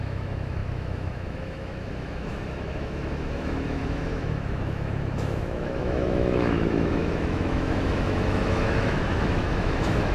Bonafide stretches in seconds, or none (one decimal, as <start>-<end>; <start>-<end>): none